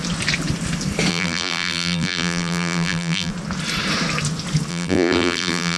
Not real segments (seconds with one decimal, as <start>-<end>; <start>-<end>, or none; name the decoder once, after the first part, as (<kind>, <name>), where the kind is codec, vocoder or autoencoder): 1.1-3.3 (vocoder, BigVGAN v2); 4.7-5.8